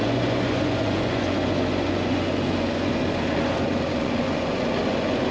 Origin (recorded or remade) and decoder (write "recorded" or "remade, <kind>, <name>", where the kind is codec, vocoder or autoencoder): remade, vocoder, Vocos